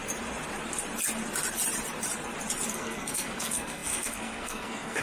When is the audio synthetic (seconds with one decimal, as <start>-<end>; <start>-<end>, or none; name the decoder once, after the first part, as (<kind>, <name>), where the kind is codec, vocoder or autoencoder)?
2.7-5.0 (codec, SNAC)